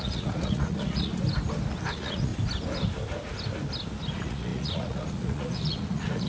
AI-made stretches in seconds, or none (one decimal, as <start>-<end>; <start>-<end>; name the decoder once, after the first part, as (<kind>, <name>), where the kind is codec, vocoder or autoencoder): 0.0-1.1 (vocoder, Vocos); 1.9-2.3; 4.1-6.3

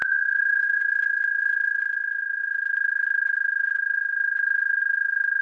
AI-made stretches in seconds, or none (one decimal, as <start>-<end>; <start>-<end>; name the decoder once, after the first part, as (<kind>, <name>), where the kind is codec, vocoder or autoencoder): 0.0-0.8 (vocoder, Vocos)

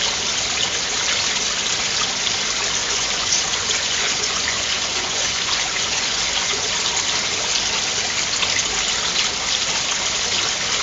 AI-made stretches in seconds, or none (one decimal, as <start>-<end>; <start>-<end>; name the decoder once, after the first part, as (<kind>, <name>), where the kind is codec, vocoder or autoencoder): 2.8-6.7 (vocoder, Vocos)

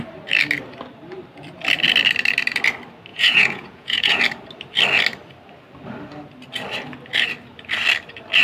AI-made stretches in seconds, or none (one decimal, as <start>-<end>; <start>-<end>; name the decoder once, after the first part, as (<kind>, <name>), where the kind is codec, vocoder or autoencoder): 3.1-4.2 (vocoder, Vocos)

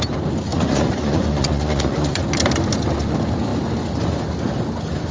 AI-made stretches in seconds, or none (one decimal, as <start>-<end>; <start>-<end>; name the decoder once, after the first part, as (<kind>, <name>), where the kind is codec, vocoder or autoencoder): 0.5-2.2 (vocoder, Vocos)

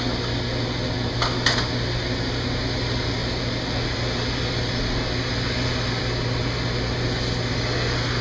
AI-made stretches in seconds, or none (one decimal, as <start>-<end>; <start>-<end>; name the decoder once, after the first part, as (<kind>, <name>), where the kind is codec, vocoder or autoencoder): none

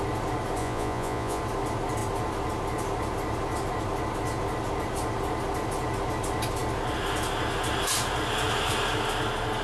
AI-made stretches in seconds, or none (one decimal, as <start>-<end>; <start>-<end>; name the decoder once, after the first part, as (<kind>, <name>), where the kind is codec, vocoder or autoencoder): 0.6-1.4 (vocoder, Vocos)